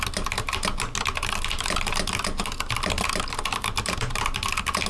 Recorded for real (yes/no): yes